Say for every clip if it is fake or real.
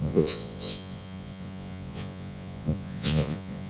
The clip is fake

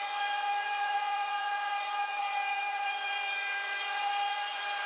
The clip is fake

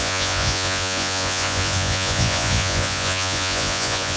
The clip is fake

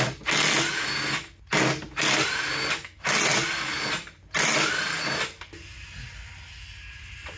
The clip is real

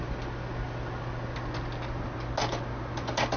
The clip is real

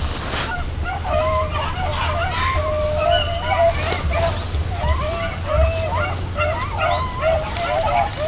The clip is real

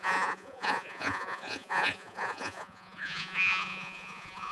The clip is fake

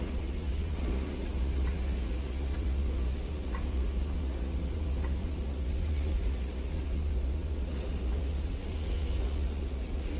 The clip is fake